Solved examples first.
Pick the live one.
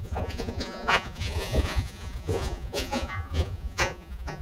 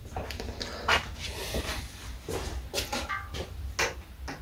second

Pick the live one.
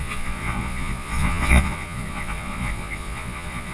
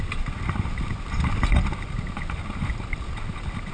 second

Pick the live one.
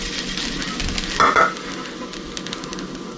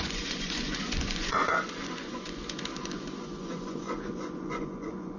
first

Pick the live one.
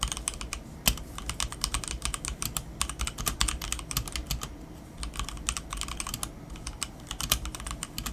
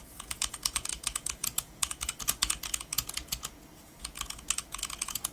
first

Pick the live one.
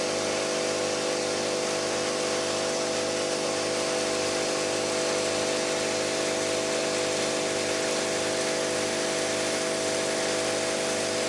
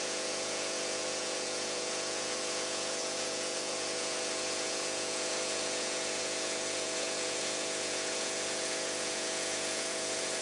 first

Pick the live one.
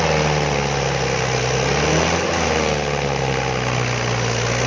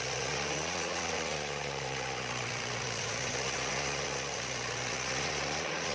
first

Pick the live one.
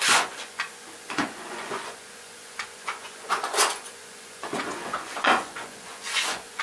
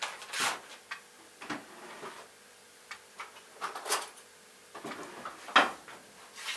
second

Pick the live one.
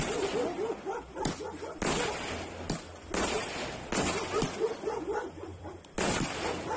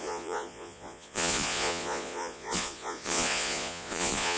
first